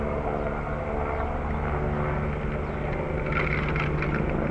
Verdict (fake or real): real